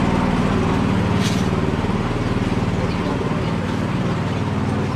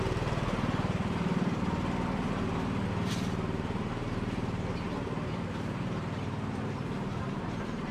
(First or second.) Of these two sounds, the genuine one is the first